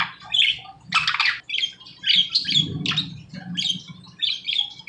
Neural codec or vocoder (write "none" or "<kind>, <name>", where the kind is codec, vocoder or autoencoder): none